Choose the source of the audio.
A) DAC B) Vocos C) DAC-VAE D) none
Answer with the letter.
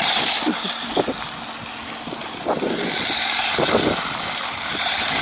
D